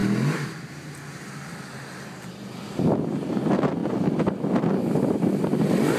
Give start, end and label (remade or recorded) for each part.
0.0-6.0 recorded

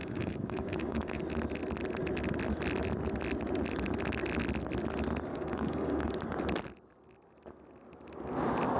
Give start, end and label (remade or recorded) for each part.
0.0-1.2 remade; 1.2-5.3 recorded; 5.3-6.1 remade; 6.1-8.8 recorded

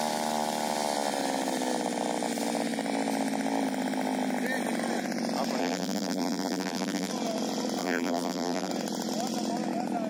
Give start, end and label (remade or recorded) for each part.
0.0-5.6 recorded; 5.6-7.1 remade; 7.1-7.8 recorded; 7.8-8.7 remade; 8.7-10.1 recorded

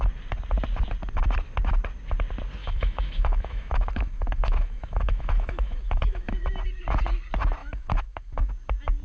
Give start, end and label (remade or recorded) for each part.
0.0-2.6 recorded; 2.6-6.5 remade; 6.5-7.6 recorded; 7.6-8.5 remade; 8.5-9.0 recorded

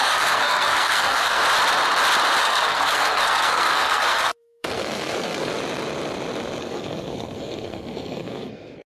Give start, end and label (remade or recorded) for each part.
0.0-1.4 remade; 1.4-2.4 recorded; 2.4-5.5 remade; 5.5-6.6 recorded; 6.6-8.9 remade